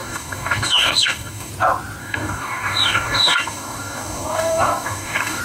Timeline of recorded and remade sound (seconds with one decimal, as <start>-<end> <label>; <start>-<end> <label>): 0.0-1.5 remade; 1.5-2.0 recorded; 2.0-5.4 remade